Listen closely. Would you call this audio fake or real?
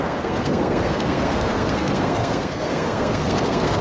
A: fake